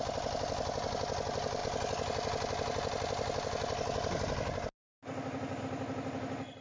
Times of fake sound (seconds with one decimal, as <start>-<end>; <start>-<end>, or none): none

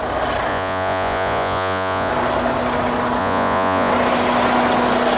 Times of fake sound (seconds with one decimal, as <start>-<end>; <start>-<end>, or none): 0.5-2.1; 3.2-3.9

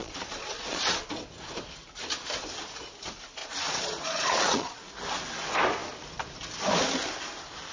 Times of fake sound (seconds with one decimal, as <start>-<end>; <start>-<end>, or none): 0.0-0.8; 3.4-4.8

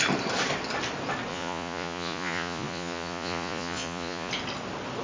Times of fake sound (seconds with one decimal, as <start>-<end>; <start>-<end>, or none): 1.3-4.3

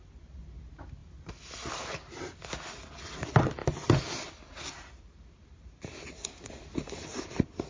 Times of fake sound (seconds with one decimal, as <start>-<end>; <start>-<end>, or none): none

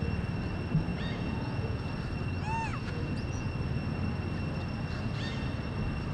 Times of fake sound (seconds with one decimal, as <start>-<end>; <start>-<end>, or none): 0.9-1.9; 2.7-3.5

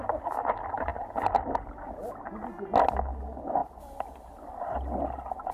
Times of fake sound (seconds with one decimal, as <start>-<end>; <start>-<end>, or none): none